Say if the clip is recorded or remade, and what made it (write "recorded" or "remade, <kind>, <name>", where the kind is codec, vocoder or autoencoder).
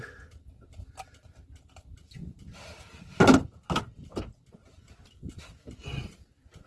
recorded